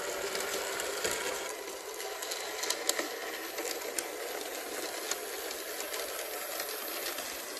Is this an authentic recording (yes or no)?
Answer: yes